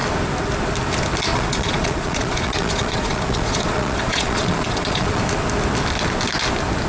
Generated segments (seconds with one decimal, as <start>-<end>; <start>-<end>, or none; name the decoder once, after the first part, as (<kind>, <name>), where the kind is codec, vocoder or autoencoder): 1.3-5.2 (vocoder, Vocos)